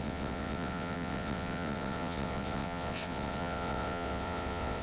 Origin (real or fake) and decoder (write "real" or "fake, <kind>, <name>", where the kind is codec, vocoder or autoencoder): fake, vocoder, WaveNeXt